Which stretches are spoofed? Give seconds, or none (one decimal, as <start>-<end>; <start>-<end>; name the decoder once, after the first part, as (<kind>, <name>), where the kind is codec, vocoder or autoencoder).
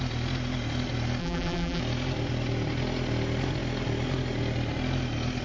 1.2-1.8 (vocoder, BigVGAN v2)